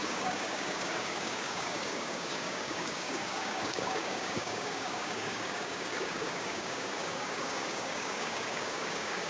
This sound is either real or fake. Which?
fake